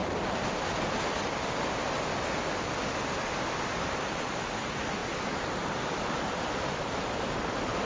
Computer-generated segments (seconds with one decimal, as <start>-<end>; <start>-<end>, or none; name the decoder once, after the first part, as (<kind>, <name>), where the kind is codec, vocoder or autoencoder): 3.6-7.9 (vocoder, BigVGAN v2)